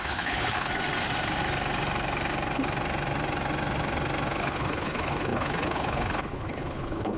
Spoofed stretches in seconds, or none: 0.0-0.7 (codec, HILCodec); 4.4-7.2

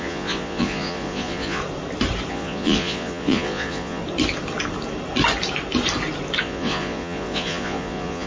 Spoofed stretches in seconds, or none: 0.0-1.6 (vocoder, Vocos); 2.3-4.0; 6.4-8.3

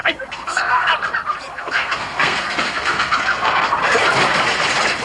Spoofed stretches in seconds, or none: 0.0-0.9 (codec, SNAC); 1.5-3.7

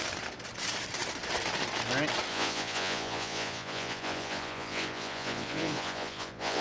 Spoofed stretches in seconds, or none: 2.3-6.6 (vocoder, Vocos)

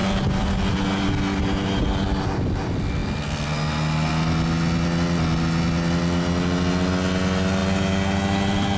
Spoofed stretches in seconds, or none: none